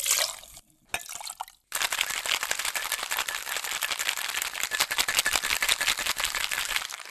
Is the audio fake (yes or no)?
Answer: no